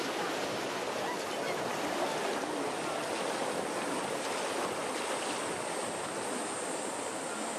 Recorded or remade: recorded